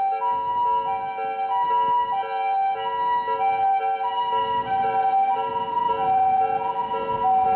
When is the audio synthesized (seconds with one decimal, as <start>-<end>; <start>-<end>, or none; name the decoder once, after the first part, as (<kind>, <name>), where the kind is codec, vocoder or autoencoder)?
none